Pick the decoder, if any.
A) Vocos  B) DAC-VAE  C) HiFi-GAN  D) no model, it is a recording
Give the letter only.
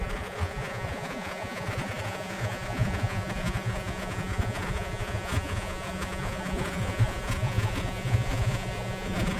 A